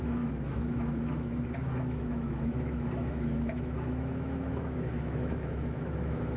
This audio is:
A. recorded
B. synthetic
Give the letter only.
B